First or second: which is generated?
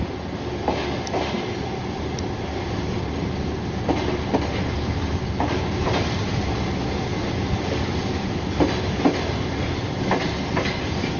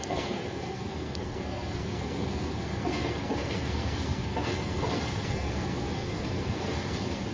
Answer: second